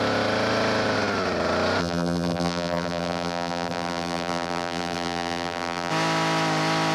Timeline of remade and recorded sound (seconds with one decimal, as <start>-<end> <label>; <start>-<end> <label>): 0.0-1.8 recorded; 1.8-5.9 remade; 5.9-6.9 recorded